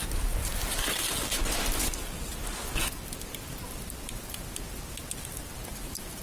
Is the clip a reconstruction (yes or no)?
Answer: no